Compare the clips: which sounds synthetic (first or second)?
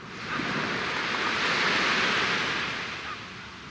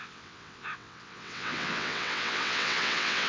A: second